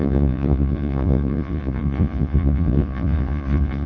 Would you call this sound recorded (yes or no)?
no